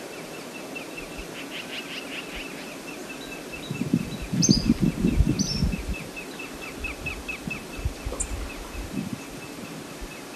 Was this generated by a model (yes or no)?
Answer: no